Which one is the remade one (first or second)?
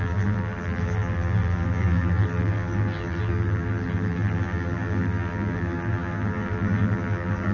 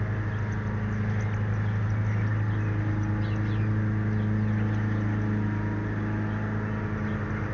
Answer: first